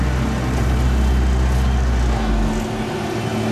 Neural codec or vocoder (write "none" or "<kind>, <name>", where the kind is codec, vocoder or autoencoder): none